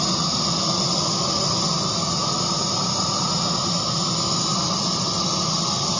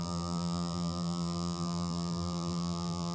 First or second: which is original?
first